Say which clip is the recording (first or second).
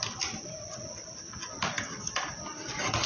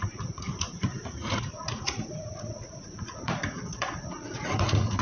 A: first